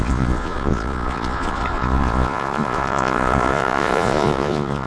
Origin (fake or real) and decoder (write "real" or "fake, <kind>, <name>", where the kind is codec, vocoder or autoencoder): fake, vocoder, Vocos